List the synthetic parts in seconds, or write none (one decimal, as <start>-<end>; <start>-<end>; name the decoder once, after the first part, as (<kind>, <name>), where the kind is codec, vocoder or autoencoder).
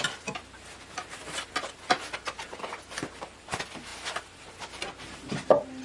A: none